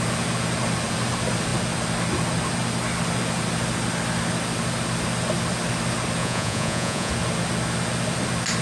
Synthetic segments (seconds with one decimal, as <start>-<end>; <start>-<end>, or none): 6.2-7.1